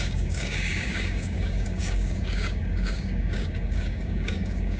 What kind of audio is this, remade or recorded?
remade